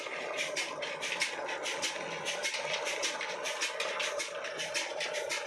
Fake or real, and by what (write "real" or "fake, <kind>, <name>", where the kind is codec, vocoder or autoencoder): real